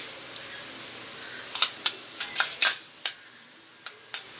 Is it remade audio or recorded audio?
recorded